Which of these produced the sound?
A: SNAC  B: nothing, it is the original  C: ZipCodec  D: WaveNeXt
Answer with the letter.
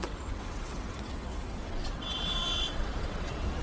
D